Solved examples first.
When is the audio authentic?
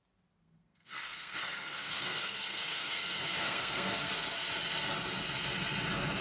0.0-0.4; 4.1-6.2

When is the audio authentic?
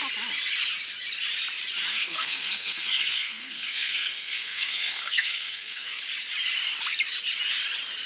0.0-1.9; 6.0-8.1